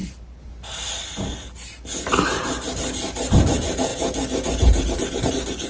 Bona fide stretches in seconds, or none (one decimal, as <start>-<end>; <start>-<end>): 0.0-5.7